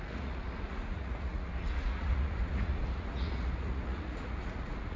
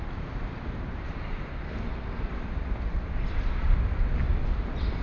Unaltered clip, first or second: second